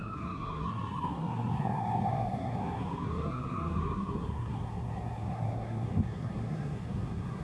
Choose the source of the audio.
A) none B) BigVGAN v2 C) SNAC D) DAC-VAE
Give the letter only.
C